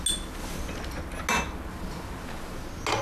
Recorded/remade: recorded